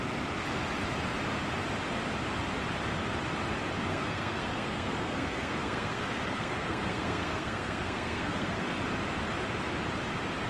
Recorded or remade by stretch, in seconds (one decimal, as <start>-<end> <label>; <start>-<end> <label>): 0.0-3.9 recorded; 3.9-8.8 remade; 8.8-10.5 recorded

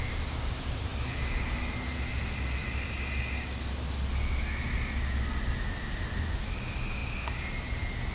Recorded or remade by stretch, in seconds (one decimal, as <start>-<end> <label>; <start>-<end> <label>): 0.0-8.1 recorded